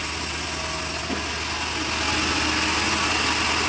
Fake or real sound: real